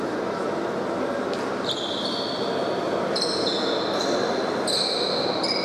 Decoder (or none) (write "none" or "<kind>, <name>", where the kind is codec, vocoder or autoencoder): none